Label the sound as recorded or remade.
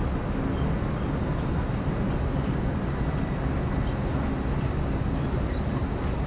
recorded